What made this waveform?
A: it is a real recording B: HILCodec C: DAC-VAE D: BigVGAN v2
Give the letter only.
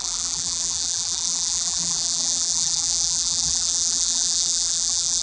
D